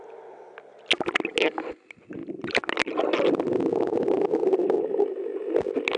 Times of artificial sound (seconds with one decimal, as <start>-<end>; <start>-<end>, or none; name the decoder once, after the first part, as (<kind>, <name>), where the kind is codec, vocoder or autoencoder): none